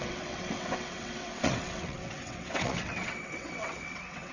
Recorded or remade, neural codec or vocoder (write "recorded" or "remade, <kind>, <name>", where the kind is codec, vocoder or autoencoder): remade, vocoder, WaveNeXt